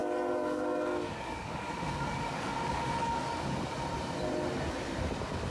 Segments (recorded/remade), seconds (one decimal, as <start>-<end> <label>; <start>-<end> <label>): 0.0-3.3 remade; 3.3-5.5 recorded